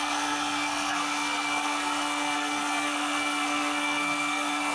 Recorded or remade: remade